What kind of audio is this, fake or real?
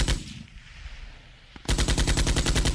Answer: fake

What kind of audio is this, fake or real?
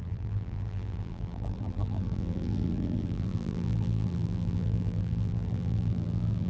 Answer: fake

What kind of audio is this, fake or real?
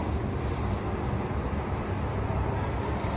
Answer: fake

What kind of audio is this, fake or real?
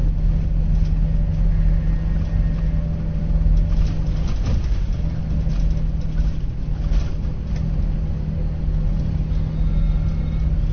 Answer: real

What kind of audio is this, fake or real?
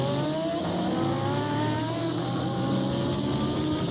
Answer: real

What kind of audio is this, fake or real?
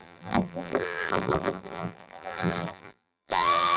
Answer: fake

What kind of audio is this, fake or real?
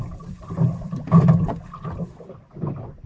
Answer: fake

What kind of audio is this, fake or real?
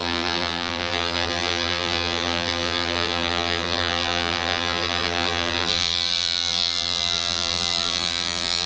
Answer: fake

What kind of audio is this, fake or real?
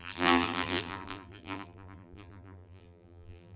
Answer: fake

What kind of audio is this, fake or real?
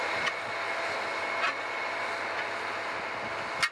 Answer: real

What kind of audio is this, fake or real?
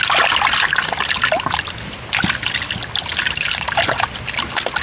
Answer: real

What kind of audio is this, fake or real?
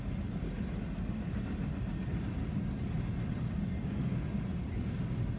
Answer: real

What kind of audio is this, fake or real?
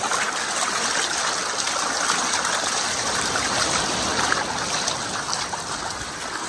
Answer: real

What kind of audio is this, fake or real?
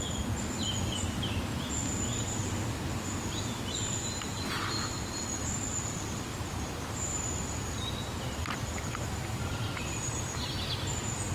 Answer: fake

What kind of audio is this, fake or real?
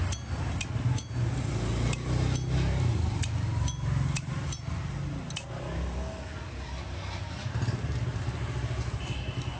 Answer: real